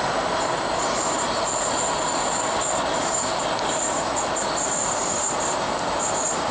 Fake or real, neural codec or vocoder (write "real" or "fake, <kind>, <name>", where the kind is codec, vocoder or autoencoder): fake, vocoder, BigVGAN v2